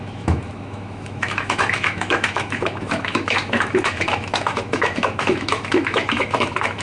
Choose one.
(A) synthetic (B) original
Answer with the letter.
A